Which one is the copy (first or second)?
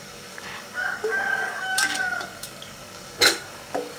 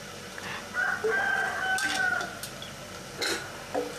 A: first